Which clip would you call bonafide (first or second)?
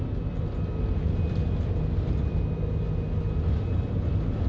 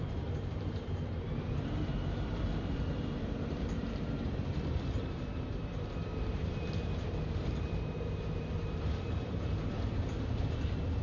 first